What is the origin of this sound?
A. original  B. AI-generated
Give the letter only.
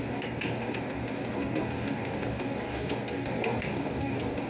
B